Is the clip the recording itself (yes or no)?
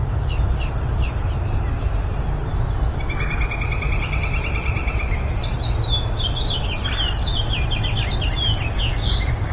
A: yes